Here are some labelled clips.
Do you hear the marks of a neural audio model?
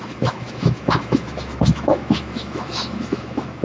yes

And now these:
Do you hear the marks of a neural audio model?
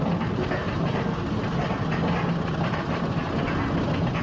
no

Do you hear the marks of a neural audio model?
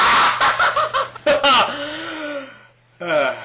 no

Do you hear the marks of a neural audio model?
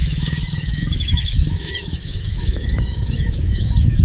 yes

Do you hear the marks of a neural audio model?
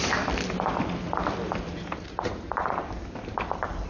no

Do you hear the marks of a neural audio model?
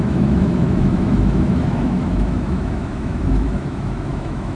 yes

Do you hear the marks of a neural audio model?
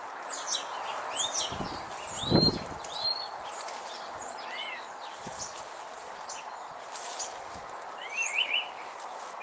no